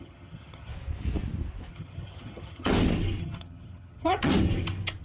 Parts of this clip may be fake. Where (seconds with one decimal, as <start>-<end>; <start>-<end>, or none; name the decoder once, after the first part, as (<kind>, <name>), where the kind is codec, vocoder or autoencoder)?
0.0-0.7 (vocoder, HiFi-GAN); 1.7-2.7; 3.2-4.3